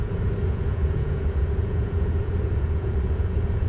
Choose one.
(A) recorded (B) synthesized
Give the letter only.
B